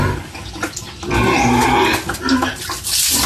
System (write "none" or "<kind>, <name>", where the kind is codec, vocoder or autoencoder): none